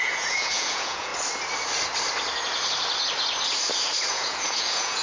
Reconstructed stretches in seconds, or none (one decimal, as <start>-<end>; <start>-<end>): 0.0-1.1; 4.1-5.0